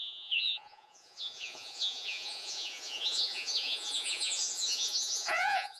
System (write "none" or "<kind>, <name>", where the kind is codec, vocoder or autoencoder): vocoder, Vocos